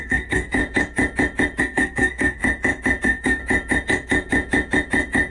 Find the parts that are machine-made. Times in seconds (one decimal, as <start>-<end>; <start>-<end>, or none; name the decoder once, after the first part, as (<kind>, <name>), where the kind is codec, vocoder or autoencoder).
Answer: 0.0-0.6 (codec, SNAC); 1.6-2.4; 3.0-3.4